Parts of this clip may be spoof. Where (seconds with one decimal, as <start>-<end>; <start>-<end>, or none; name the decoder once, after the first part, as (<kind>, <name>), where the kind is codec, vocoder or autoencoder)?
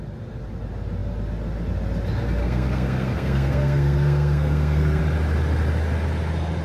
2.4-5.0 (codec, SNAC)